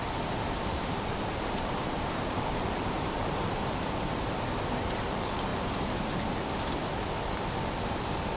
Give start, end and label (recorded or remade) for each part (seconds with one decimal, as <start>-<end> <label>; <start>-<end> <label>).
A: 0.0-0.7 recorded; 0.7-4.3 remade; 4.3-8.4 recorded